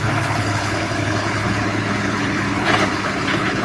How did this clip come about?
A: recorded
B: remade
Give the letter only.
B